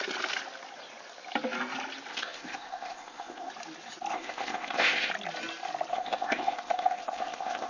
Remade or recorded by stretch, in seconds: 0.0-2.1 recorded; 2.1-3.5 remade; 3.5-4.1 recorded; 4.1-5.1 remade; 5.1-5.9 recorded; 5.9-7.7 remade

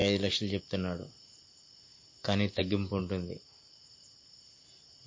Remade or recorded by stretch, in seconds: 0.0-5.1 recorded

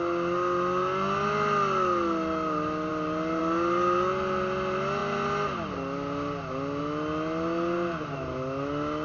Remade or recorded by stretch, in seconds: 0.0-9.0 recorded

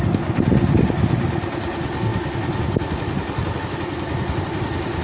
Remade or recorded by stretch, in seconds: 0.0-5.0 recorded

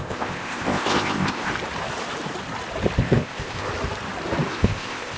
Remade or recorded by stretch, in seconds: 0.0-1.5 remade; 1.5-3.0 recorded; 3.0-3.7 remade; 3.7-4.5 recorded; 4.5-5.2 remade